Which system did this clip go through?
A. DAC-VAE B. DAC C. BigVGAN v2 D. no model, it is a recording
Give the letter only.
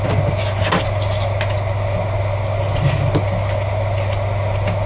D